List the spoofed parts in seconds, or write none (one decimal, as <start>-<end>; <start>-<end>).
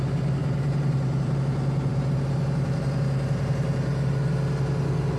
0.4-1.3